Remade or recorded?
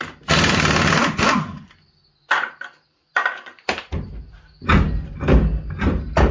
recorded